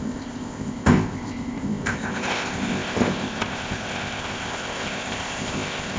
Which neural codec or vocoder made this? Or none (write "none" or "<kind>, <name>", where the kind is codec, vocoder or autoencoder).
codec, ZipCodec